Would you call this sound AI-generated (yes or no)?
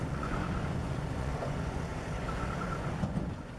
yes